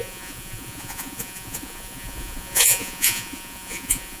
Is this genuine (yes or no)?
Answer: no